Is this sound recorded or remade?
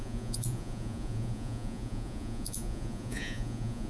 remade